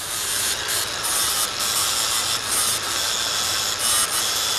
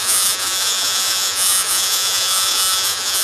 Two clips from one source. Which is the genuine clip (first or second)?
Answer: first